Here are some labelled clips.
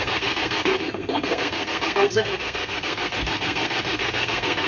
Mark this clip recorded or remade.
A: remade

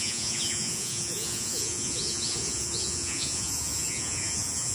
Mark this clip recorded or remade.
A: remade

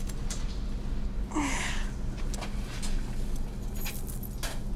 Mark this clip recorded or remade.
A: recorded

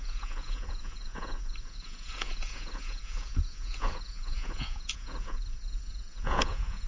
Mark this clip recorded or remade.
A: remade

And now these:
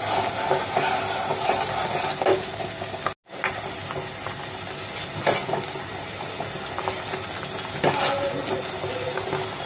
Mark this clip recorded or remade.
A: recorded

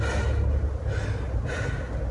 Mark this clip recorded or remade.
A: recorded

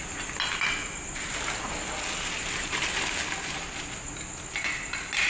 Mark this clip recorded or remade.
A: recorded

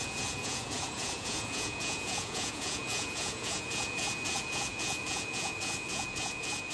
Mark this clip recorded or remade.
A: remade